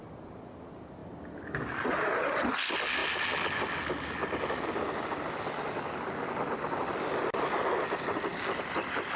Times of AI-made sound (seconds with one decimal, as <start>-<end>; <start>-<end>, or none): none